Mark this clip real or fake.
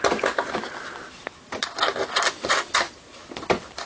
real